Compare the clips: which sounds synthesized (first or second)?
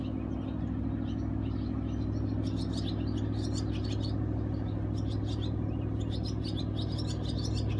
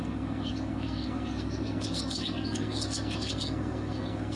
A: second